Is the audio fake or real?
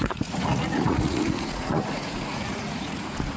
fake